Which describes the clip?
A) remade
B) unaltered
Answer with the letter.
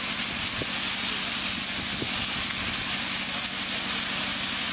B